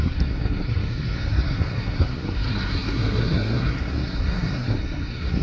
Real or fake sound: fake